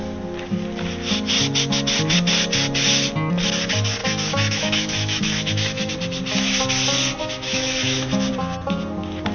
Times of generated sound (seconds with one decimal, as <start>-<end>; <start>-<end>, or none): 4.0-5.9; 7.2-8.3